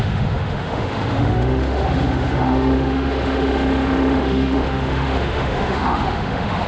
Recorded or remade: remade